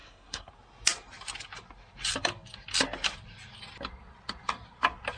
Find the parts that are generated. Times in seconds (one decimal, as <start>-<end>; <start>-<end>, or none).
0.0-0.5